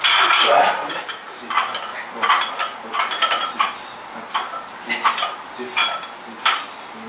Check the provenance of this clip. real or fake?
real